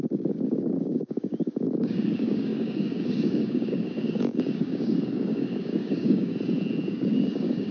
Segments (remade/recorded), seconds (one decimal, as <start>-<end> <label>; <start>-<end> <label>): 0.0-6.3 remade; 6.3-6.9 recorded; 6.9-7.7 remade

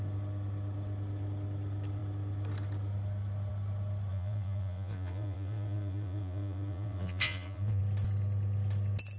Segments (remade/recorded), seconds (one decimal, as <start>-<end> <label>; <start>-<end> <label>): 0.0-4.1 recorded; 4.1-7.8 remade; 7.8-9.2 recorded